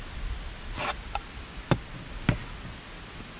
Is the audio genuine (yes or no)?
yes